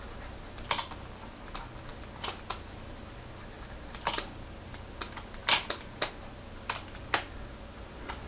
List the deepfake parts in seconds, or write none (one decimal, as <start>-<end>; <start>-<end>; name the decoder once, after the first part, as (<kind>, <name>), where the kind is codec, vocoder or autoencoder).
none